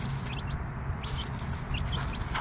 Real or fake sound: real